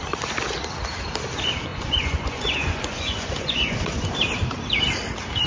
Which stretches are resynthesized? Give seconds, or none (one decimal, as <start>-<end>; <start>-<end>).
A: 1.7-4.1